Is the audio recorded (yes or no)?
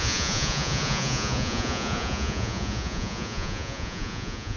no